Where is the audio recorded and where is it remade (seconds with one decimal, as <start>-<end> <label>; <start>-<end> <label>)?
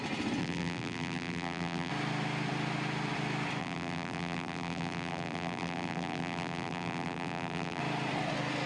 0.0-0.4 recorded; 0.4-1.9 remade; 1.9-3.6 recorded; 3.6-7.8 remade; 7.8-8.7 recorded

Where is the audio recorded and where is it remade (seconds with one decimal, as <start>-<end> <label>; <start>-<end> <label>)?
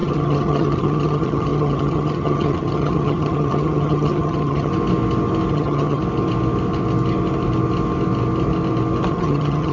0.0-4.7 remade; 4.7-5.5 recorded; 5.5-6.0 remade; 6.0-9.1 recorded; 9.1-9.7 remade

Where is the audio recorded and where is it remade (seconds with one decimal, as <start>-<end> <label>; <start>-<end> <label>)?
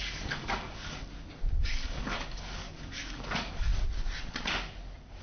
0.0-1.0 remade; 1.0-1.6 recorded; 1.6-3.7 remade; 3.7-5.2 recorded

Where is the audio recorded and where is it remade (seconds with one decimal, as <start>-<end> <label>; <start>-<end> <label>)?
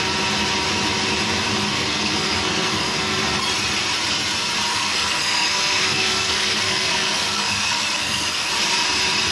0.0-1.7 recorded; 1.7-3.2 remade; 3.2-4.7 recorded; 4.7-8.5 remade; 8.5-9.3 recorded